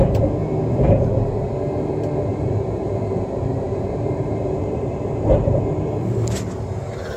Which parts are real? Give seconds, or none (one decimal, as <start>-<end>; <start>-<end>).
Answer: 0.0-2.3; 5.6-7.2